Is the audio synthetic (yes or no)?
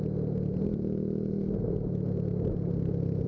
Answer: no